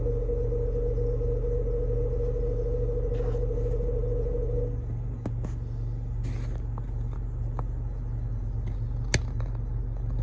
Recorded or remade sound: recorded